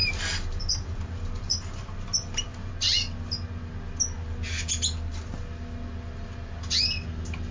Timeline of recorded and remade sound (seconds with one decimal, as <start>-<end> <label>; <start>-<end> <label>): 0.0-2.7 remade; 2.7-7.5 recorded